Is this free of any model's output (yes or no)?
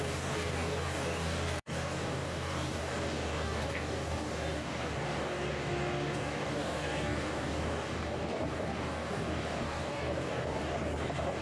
no